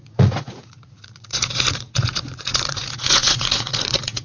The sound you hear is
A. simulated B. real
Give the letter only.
A